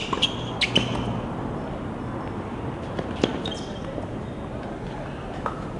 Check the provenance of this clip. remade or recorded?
recorded